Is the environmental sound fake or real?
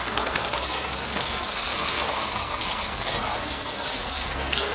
fake